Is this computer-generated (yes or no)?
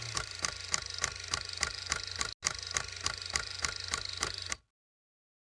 no